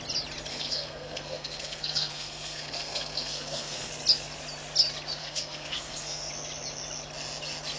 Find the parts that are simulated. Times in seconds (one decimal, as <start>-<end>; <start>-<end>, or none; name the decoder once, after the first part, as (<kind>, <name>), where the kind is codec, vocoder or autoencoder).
0.5-3.9 (codec, SNAC); 5.2-6.3